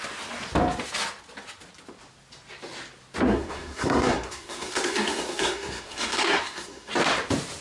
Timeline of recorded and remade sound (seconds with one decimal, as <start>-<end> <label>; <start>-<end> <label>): 0.0-3.3 recorded; 3.3-6.9 remade; 6.9-7.6 recorded